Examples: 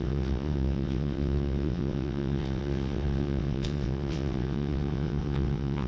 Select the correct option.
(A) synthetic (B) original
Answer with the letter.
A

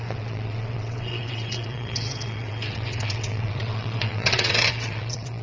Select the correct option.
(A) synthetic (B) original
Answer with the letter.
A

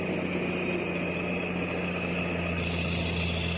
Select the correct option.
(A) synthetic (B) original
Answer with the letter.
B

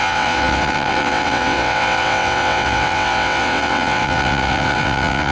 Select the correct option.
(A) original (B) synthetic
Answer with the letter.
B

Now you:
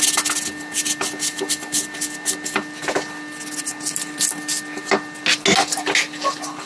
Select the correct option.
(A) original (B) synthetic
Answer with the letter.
A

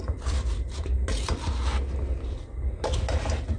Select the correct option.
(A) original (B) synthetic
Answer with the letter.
A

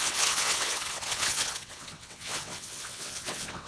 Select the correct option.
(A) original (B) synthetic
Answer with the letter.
B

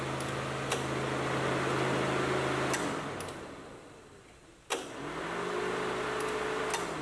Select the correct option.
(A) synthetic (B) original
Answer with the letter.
B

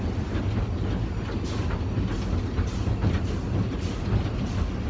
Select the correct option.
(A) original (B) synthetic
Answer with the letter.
A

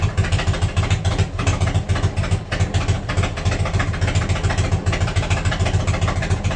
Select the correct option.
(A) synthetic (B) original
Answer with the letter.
B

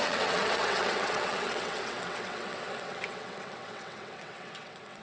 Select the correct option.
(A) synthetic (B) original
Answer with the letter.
A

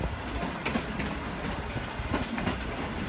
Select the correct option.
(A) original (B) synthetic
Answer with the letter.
A